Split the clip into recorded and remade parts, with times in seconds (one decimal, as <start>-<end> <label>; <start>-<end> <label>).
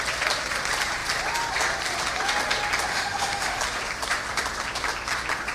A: 0.0-2.9 recorded; 2.9-3.6 remade; 3.6-5.5 recorded